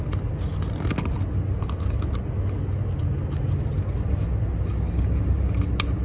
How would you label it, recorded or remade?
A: recorded